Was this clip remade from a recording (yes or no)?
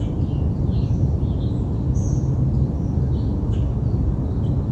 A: no